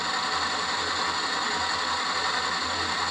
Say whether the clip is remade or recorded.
recorded